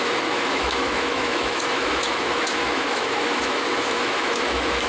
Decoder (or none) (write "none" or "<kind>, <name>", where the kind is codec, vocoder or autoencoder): autoencoder, DAC-VAE